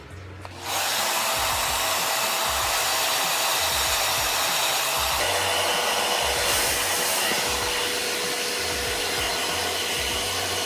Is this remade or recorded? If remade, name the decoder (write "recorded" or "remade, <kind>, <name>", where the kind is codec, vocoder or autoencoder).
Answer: recorded